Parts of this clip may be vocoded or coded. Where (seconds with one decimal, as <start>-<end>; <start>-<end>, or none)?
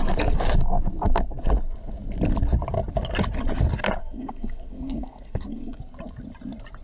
4.0-5.8